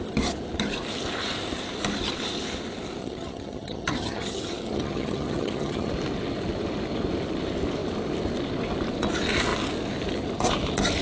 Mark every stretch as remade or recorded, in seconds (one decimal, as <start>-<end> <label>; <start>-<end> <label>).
0.0-3.0 recorded; 3.0-5.9 remade; 5.9-11.0 recorded